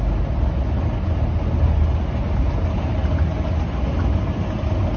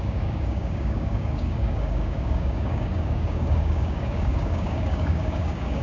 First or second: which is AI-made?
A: second